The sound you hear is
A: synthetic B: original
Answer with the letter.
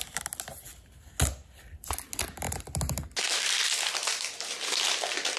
B